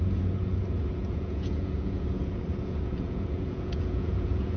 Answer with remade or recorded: remade